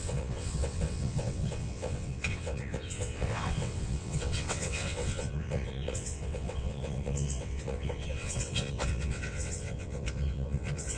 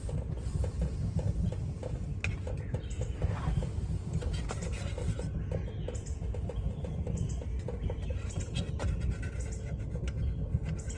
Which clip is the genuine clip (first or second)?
second